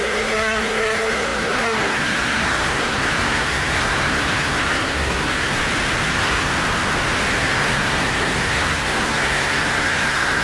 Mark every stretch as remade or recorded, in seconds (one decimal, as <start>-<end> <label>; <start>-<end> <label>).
0.0-5.6 remade; 5.6-6.1 recorded; 6.1-6.5 remade; 6.5-7.4 recorded; 7.4-10.4 remade